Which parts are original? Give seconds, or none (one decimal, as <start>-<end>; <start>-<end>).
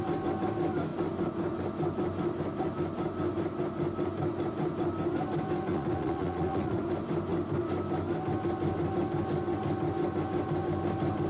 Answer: 0.0-5.7; 6.8-11.3